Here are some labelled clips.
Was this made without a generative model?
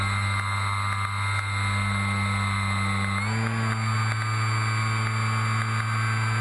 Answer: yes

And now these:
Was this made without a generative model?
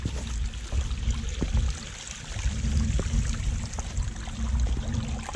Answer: yes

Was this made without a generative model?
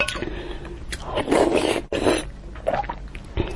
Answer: yes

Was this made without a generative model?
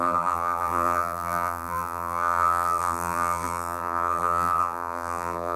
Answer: no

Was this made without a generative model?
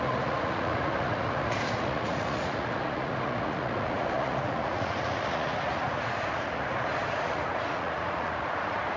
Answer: no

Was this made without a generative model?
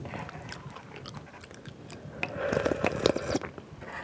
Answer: yes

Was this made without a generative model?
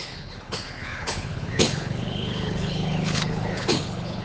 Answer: no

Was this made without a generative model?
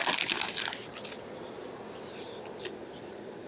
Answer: yes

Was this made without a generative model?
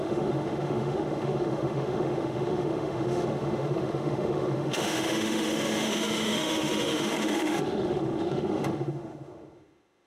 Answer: no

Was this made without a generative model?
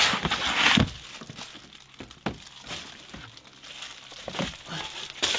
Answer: yes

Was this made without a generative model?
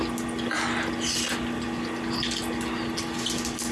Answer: yes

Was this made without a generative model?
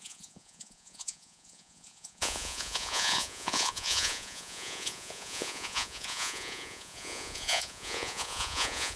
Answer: no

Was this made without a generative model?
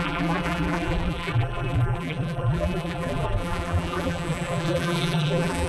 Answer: no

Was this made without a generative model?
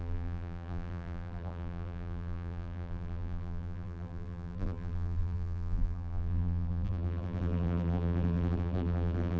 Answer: no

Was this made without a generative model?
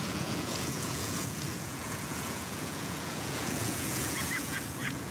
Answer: no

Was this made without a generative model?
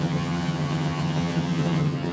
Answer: no